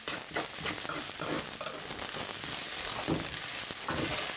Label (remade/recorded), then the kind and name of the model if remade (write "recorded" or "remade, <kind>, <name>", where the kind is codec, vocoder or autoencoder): recorded